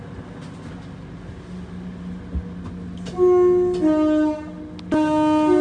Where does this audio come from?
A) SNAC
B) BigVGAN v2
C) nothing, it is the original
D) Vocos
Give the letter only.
C